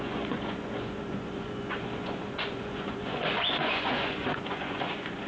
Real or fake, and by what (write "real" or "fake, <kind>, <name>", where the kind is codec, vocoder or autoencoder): fake, vocoder, Vocos